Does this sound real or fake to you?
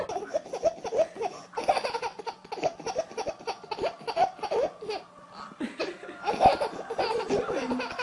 real